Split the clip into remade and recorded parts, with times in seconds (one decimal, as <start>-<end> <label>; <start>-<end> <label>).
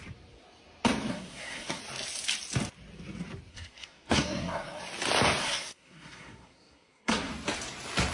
0.0-1.1 recorded; 1.1-1.8 remade; 1.8-3.5 recorded; 3.5-4.8 remade; 4.8-5.4 recorded; 5.4-7.3 remade; 7.3-8.1 recorded